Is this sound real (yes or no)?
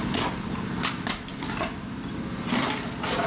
yes